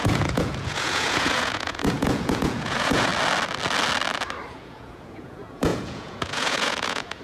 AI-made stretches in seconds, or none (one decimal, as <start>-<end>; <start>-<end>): 0.0-3.1; 4.5-7.2